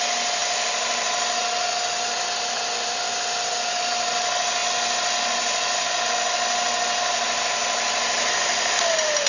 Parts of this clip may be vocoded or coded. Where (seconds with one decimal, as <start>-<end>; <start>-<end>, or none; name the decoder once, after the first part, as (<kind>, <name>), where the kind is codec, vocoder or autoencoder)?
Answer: none